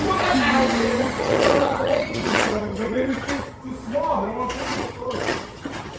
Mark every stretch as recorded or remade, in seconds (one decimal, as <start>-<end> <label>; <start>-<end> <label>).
0.0-1.0 recorded; 1.0-3.7 remade; 3.7-4.7 recorded; 4.7-6.0 remade